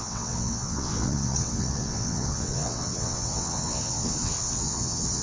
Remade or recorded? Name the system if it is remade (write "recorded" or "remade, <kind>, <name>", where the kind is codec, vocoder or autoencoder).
remade, vocoder, WaveNeXt